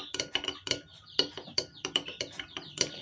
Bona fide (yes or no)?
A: no